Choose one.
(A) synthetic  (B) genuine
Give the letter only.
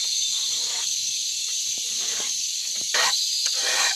A